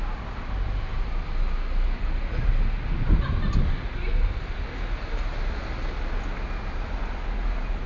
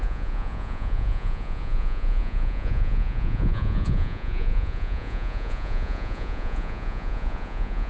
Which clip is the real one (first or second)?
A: first